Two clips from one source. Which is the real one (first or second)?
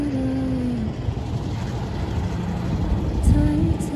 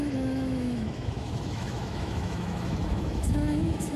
first